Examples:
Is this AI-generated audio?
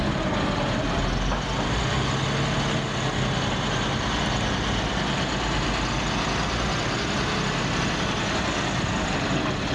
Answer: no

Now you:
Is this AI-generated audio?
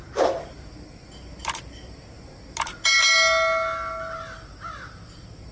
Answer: no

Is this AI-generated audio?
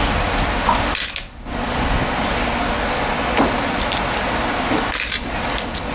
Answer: no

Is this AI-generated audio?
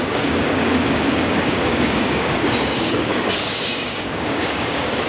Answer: yes